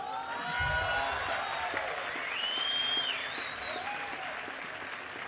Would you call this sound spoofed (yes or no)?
no